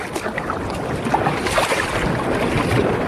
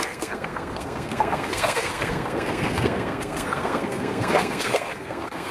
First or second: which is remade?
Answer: second